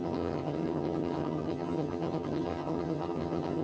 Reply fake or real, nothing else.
fake